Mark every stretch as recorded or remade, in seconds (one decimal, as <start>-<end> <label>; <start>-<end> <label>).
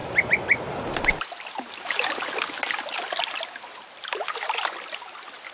0.0-5.5 recorded